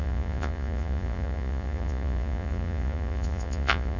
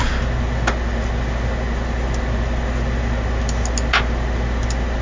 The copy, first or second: first